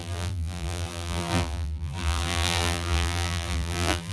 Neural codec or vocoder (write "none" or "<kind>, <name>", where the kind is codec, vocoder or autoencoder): vocoder, BigVGAN v2